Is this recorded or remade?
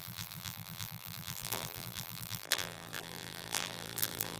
remade